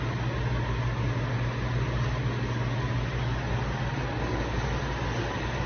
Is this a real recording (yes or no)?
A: yes